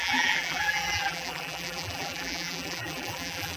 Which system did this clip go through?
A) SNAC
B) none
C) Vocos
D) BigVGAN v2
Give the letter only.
D